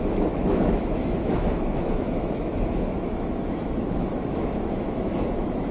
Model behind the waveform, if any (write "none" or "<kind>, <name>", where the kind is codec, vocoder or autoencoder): autoencoder, DAC-VAE